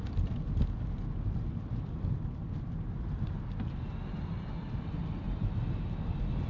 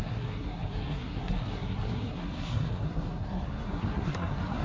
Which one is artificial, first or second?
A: second